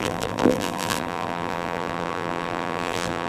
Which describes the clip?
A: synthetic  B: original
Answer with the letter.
A